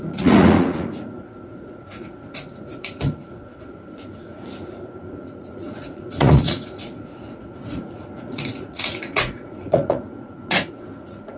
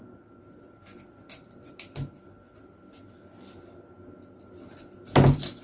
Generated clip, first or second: first